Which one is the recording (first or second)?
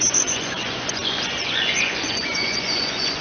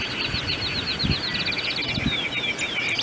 second